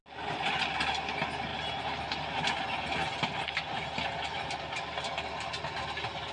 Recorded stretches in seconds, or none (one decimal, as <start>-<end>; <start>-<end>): 0.0-6.3